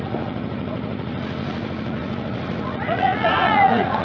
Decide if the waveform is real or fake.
fake